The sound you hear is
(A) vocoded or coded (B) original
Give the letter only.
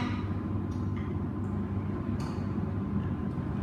B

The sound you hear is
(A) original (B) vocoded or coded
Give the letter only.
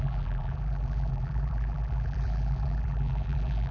B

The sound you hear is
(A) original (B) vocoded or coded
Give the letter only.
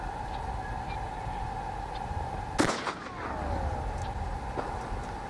A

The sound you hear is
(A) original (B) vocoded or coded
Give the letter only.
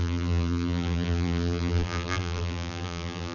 B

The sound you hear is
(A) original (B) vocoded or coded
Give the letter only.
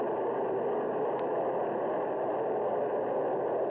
B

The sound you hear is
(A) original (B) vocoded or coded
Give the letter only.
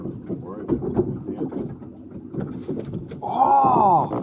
A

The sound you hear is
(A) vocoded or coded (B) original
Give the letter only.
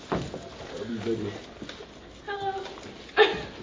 B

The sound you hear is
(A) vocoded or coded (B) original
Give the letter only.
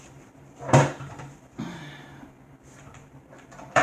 A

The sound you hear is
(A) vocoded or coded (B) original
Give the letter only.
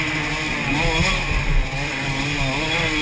B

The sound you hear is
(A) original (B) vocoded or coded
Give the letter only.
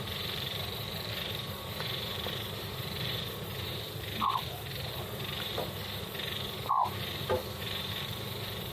B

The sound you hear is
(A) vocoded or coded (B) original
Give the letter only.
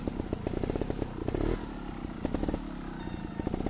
B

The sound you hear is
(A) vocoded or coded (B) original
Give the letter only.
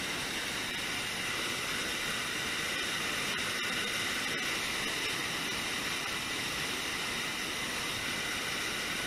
B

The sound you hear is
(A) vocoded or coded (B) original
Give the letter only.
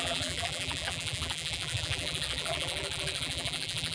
A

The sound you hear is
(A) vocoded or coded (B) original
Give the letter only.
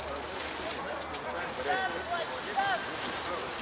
B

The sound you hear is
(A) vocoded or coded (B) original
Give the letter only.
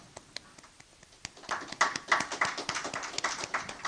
B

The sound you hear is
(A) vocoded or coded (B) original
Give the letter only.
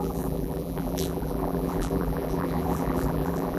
A